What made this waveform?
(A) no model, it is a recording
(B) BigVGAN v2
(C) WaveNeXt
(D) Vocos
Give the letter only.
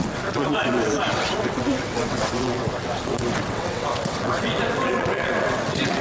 C